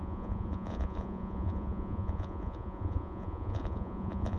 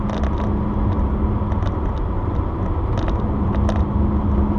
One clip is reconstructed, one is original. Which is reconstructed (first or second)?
first